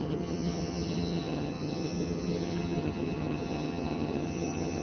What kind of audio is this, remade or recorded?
remade